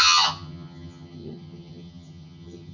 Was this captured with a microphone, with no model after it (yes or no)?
no